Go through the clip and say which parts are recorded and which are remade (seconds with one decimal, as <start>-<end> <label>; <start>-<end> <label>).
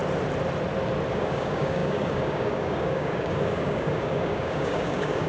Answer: 0.0-1.1 recorded; 1.1-5.3 remade